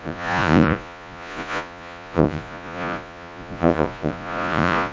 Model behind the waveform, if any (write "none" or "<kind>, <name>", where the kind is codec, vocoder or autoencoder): vocoder, Vocos